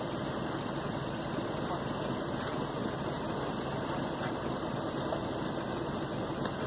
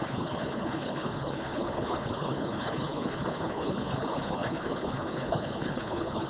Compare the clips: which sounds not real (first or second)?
second